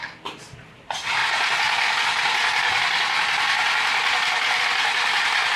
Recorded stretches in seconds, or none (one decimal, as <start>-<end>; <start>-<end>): 0.0-5.6

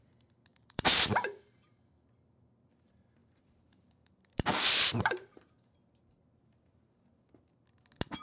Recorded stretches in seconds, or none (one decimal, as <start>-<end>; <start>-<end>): 0.0-0.5; 1.9-3.2; 7.2-8.2

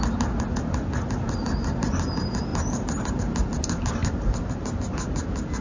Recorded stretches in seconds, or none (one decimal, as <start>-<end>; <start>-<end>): 0.0-4.0; 4.6-5.6